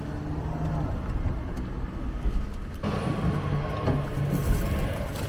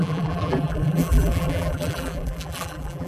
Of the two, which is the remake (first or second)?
second